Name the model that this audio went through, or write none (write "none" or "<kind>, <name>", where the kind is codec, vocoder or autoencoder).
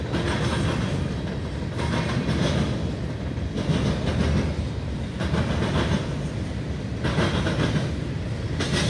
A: none